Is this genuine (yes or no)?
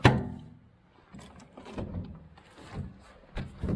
yes